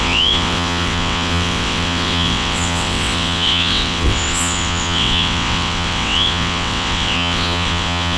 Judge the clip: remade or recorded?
remade